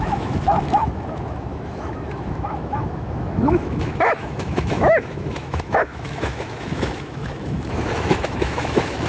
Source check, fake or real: fake